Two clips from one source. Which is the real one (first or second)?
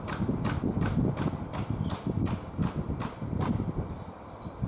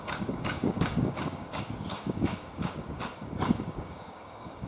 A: first